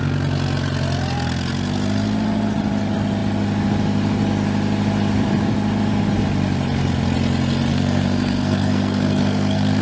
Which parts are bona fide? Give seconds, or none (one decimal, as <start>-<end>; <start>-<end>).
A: 0.0-7.7